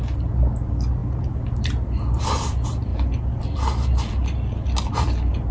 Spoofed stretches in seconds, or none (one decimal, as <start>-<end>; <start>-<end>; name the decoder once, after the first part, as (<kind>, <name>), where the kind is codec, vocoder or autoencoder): none